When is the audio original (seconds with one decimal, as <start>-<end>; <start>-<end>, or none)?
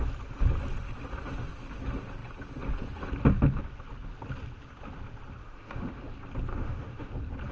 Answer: 0.0-5.4; 6.0-6.5; 7.1-7.5